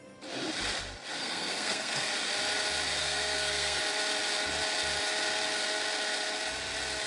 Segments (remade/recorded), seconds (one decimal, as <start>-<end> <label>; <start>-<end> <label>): 0.0-1.2 recorded; 1.2-2.1 remade; 2.1-3.0 recorded; 3.0-3.8 remade; 3.8-7.1 recorded